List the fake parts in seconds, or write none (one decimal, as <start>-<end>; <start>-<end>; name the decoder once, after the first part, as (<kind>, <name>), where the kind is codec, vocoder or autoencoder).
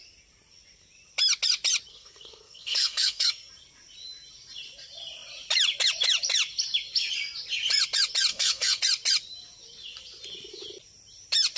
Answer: 1.9-3.5 (codec, SNAC); 8.3-8.8